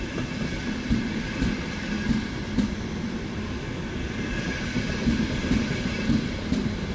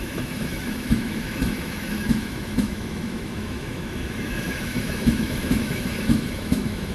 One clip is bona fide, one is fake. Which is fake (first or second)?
second